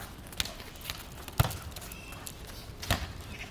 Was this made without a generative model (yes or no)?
yes